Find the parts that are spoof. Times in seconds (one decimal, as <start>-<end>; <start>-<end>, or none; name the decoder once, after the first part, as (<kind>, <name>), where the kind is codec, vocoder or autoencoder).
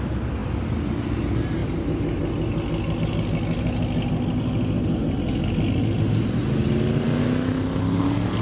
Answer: 7.2-7.8 (autoencoder, DAC-VAE)